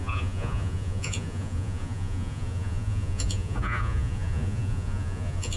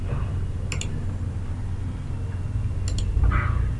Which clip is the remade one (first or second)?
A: first